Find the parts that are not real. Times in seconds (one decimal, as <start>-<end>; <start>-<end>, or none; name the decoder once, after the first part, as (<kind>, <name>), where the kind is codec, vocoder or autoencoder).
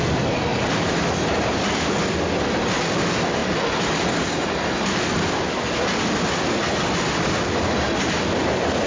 0.5-1.0 (vocoder, BigVGAN v2)